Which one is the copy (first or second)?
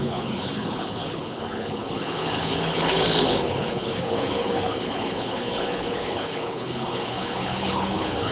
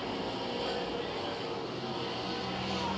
first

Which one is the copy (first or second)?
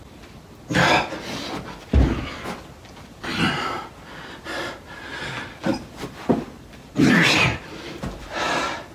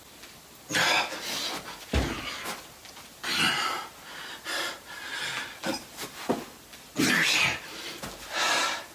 first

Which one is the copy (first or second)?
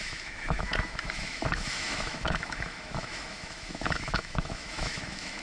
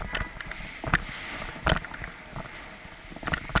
first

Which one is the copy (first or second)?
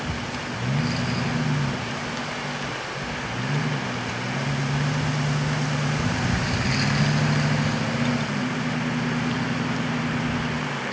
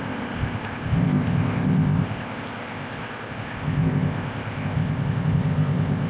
second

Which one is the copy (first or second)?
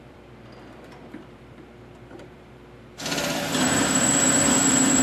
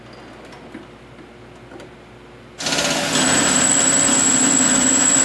first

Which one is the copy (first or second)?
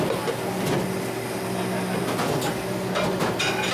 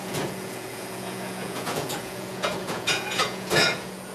second